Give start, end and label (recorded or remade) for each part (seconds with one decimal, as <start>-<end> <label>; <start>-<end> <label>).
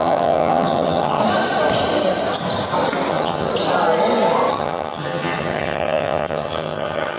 0.0-1.2 remade; 1.2-3.1 recorded; 3.1-3.5 remade; 3.5-4.5 recorded; 4.5-7.2 remade